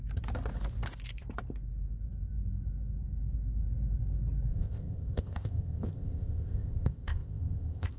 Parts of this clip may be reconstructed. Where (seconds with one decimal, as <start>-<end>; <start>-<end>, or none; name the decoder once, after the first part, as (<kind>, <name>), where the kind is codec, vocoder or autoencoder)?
4.5-8.0 (codec, ZipCodec)